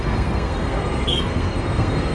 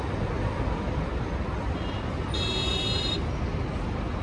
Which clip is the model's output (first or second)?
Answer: first